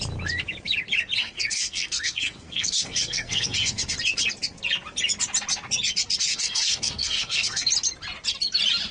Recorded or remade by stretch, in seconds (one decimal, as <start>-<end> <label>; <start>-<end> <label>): 0.0-1.2 recorded; 1.2-3.8 remade; 3.8-6.3 recorded; 6.3-7.7 remade; 7.7-8.9 recorded